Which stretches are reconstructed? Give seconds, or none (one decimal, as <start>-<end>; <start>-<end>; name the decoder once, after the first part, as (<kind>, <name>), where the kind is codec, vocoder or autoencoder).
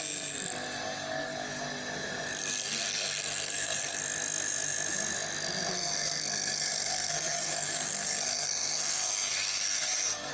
2.4-4.0 (codec, SNAC); 5.7-10.3